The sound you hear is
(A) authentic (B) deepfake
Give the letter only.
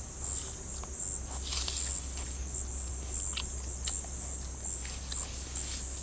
A